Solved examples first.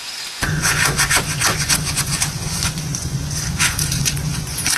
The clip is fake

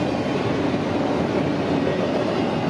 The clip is real